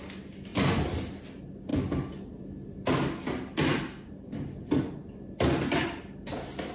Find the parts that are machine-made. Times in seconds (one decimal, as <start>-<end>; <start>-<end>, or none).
none

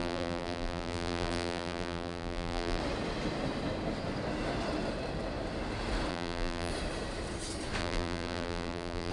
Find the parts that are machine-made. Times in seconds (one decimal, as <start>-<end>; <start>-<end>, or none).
0.0-2.8; 6.1-6.7; 7.8-9.1

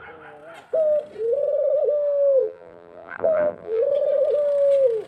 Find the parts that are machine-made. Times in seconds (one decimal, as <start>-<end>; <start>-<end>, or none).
2.4-3.8

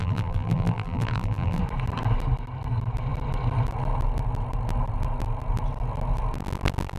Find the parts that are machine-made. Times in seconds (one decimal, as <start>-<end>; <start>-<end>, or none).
0.0-1.6